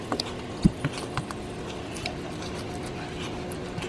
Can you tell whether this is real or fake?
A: real